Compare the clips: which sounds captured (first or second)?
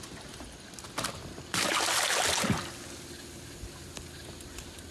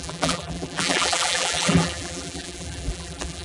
first